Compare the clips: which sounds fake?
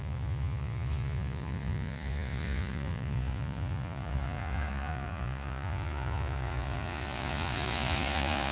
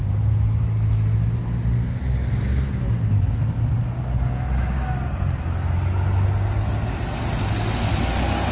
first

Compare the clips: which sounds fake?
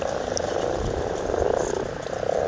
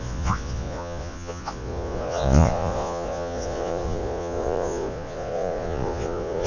second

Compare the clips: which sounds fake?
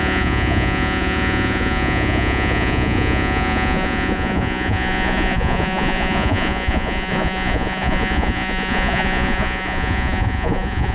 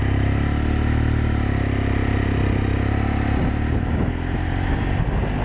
first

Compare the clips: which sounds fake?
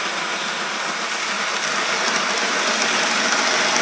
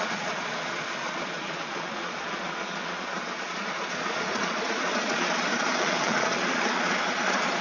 second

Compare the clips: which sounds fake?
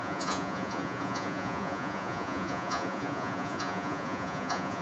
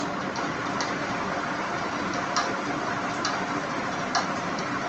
first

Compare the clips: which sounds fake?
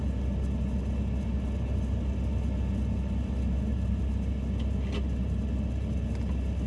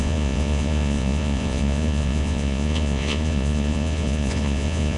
second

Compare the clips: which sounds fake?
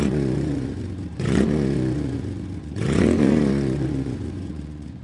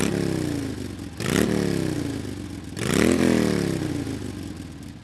first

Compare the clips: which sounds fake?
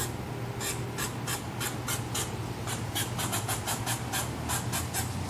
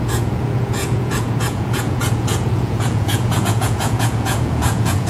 second